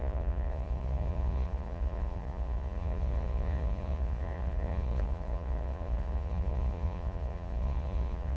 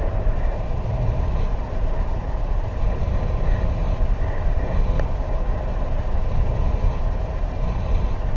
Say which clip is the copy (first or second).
first